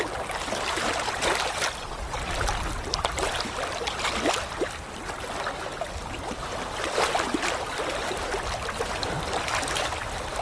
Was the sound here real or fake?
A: real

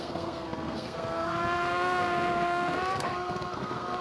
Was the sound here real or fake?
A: fake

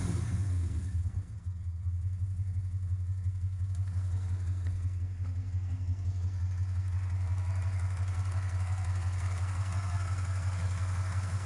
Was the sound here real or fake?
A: fake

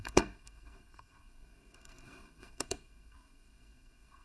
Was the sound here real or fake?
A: fake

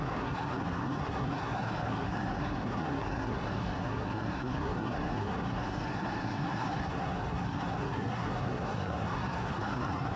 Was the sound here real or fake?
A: fake